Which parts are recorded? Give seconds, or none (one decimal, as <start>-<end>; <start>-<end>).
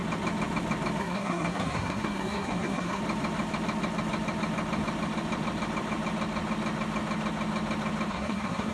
0.0-1.0; 3.0-8.1